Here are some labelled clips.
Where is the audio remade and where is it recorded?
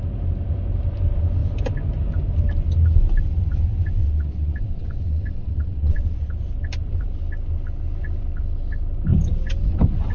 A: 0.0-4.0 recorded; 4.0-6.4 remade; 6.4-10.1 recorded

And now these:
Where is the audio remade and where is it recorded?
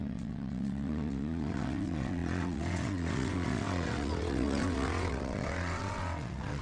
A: 0.0-6.6 remade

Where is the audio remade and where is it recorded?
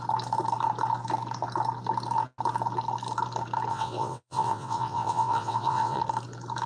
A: 0.0-3.7 recorded; 3.7-6.0 remade; 6.0-6.7 recorded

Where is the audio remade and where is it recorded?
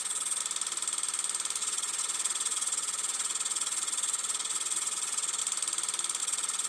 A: 0.0-0.4 remade; 0.4-1.6 recorded; 1.6-5.4 remade; 5.4-6.2 recorded; 6.2-6.7 remade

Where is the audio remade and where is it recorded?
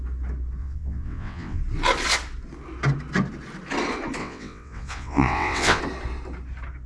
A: 0.0-0.6 recorded; 0.6-1.6 remade; 1.6-4.2 recorded; 4.2-5.8 remade; 5.8-6.9 recorded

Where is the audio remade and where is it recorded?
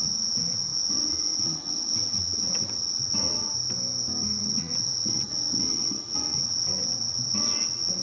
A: 0.0-3.5 remade; 3.5-4.4 recorded; 4.4-8.0 remade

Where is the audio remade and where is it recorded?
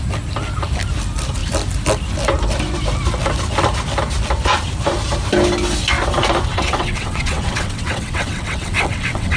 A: 0.0-6.5 recorded; 6.5-9.4 remade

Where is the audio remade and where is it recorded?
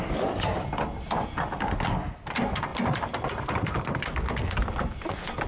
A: 0.0-5.5 recorded